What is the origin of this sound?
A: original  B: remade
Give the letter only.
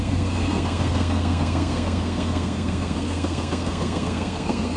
B